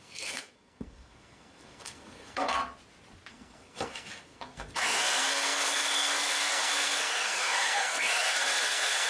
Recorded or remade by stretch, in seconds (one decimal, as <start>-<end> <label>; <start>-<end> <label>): 0.0-2.6 remade; 2.6-3.3 recorded; 3.3-9.1 remade